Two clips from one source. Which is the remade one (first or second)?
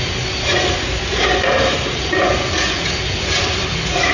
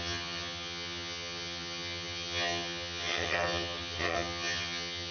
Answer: second